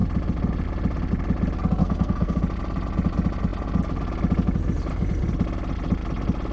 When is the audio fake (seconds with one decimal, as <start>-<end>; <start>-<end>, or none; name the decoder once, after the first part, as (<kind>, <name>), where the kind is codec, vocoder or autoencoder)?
1.8-2.4 (codec, SNAC)